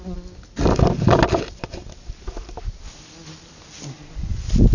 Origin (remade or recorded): recorded